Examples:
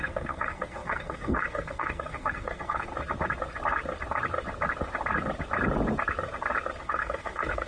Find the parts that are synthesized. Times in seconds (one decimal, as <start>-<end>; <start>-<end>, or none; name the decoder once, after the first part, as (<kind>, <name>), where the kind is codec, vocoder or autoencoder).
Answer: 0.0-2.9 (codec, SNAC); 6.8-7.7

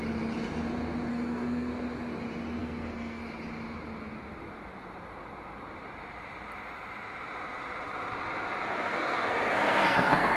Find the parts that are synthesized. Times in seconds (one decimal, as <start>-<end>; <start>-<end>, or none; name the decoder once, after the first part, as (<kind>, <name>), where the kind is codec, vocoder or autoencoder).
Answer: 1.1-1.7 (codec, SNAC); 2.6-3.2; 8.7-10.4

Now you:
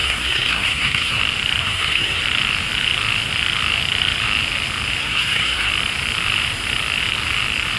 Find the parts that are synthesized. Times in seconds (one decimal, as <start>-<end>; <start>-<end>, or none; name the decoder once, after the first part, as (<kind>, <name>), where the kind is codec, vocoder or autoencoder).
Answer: 0.0-1.2 (codec, SNAC); 1.6-2.2; 5.0-5.7

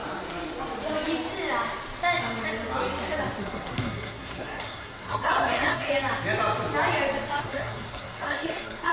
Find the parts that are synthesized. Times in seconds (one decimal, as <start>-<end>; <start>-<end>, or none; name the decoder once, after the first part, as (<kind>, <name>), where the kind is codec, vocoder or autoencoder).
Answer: 3.4-5.9 (codec, SNAC); 7.4-8.9